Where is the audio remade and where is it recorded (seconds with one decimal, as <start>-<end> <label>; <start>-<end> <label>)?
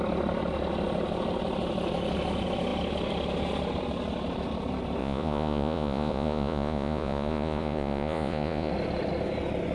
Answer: 0.0-5.0 recorded; 5.0-8.7 remade; 8.7-9.7 recorded